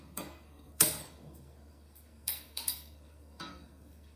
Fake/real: fake